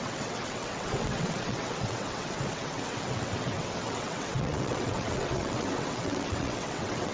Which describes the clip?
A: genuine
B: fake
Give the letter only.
B